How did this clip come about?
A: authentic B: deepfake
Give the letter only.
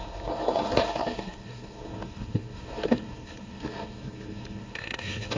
B